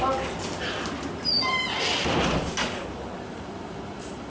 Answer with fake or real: real